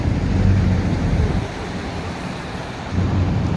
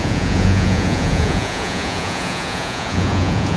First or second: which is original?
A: first